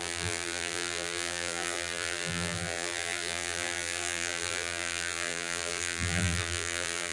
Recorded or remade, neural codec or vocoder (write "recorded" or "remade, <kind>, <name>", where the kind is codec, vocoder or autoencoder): remade, vocoder, BigVGAN v2